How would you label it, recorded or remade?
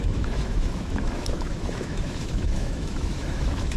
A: remade